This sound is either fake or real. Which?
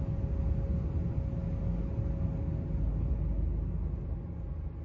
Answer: real